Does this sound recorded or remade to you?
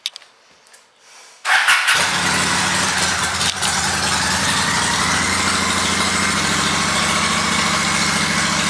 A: recorded